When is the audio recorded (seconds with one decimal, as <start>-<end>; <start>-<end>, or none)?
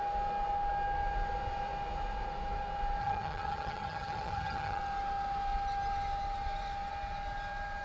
0.0-3.0; 4.8-7.8